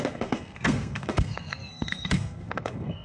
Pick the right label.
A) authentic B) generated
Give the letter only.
B